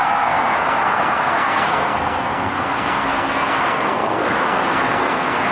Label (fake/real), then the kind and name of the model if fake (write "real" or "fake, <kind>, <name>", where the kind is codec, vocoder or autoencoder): fake, codec, SNAC